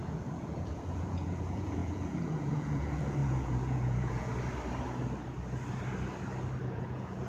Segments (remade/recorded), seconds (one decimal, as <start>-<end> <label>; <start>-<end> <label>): 0.0-4.3 remade; 4.3-6.6 recorded; 6.6-7.3 remade